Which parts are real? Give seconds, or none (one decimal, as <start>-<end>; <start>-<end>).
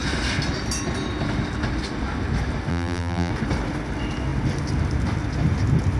0.0-2.7; 3.3-6.0